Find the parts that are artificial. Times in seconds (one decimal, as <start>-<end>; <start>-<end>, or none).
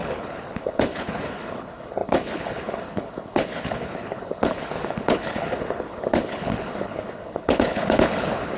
0.0-8.6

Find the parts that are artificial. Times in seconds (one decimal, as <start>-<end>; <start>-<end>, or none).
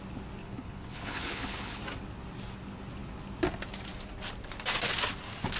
0.4-1.8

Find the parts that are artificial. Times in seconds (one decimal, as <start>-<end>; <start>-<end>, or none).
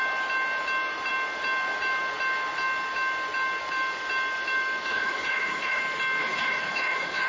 4.9-5.8; 6.2-7.3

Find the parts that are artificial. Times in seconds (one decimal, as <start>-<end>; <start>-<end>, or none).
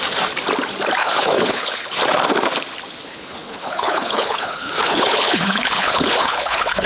1.0-2.0; 3.1-6.9